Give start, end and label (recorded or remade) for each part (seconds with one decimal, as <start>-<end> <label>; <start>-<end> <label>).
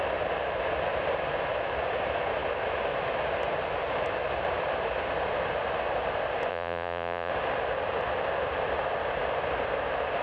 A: 0.0-6.5 recorded; 6.5-7.3 remade; 7.3-10.2 recorded